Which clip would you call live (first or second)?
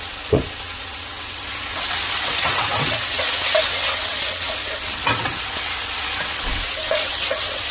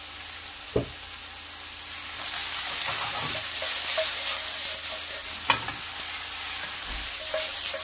second